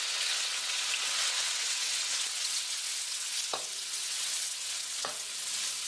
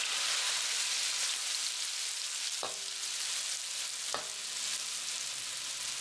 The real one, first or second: second